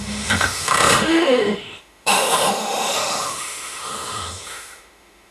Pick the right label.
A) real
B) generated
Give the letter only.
B